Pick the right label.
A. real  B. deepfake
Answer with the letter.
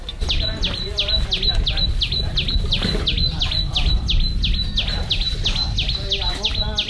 A